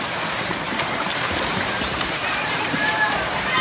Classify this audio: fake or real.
fake